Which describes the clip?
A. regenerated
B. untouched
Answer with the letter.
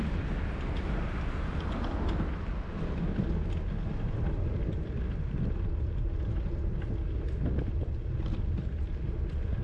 B